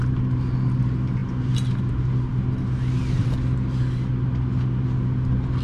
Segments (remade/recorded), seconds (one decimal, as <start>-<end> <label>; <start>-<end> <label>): 0.0-5.6 recorded